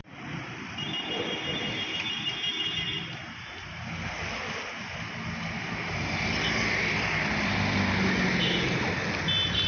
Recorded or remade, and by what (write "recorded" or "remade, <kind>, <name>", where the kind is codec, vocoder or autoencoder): recorded